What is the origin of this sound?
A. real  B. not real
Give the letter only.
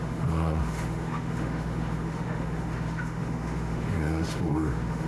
B